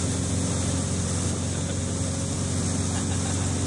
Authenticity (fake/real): real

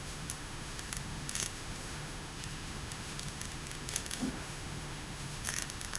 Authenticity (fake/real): fake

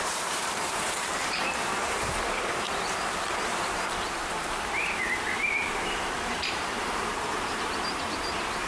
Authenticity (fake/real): fake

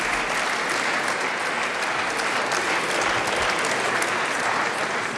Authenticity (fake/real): real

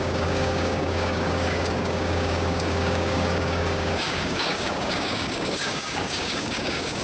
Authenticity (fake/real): fake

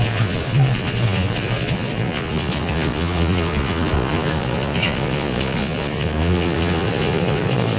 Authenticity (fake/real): fake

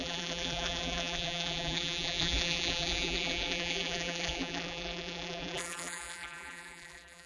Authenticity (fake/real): fake